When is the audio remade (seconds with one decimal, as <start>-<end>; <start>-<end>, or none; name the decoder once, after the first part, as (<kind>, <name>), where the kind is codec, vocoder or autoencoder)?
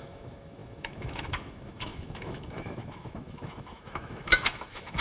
0.0-5.0 (autoencoder, DAC-VAE)